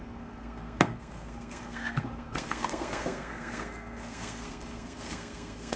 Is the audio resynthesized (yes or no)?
yes